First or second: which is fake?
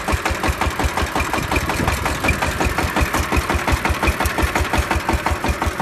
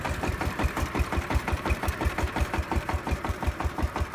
second